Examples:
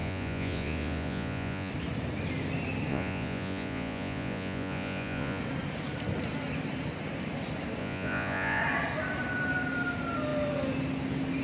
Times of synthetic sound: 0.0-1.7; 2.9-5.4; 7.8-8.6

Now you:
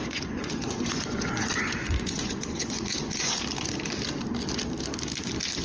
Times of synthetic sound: 0.0-3.4

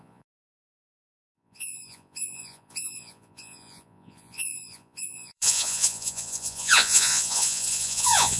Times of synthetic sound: 0.0-8.4